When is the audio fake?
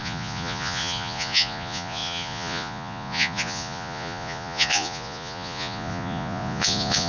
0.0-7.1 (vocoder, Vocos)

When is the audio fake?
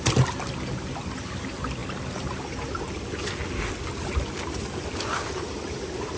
none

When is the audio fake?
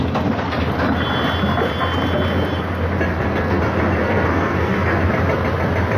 3.1-3.6 (codec, SNAC); 4.0-5.0